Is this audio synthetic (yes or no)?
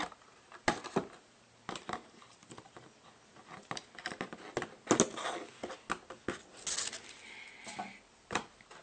no